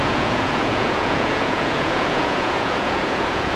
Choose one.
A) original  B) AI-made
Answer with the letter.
B